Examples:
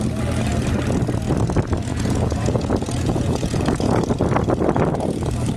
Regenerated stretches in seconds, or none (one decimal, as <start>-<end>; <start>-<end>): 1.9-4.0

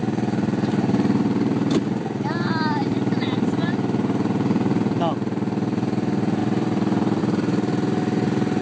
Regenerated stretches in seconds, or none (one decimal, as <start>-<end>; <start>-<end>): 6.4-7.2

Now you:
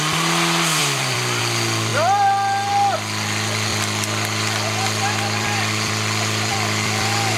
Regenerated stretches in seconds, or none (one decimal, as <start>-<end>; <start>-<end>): 0.8-1.4; 3.7-7.4